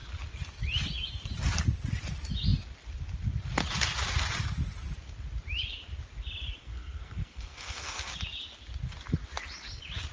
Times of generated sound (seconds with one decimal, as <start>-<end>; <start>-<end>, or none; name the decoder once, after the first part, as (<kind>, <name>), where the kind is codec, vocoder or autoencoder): 6.6-8.1 (codec, SNAC)